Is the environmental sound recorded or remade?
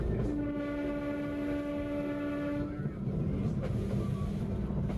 recorded